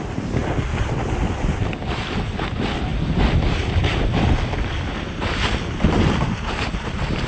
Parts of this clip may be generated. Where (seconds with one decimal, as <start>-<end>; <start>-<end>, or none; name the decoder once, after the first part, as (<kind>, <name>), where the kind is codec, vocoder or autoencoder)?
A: none